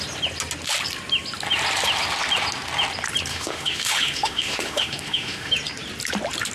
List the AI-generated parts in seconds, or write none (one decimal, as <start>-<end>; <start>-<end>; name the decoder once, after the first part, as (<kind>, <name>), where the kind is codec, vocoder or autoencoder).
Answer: 3.3-5.5 (autoencoder, DAC-VAE)